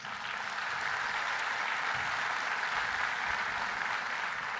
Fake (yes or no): no